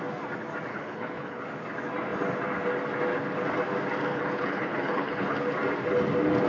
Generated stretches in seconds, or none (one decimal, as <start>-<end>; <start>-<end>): 0.7-1.4; 4.1-5.4